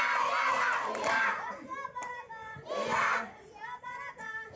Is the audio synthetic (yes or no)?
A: no